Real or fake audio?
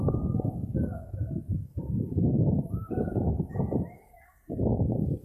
fake